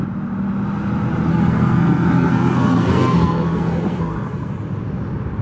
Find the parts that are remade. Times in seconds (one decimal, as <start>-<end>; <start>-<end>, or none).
1.3-4.5